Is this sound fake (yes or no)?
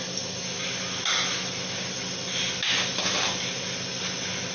no